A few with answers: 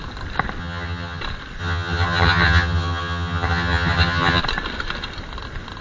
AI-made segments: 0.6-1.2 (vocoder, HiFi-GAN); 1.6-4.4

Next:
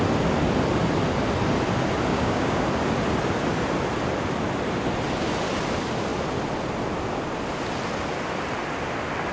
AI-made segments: 2.1-2.6 (codec, DAC)

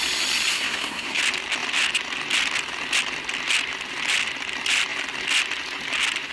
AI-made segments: 0.5-1.2 (codec, SNAC)

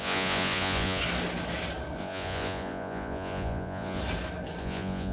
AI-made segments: 0.0-1.0 (vocoder, Vocos); 2.0-4.0; 4.6-5.1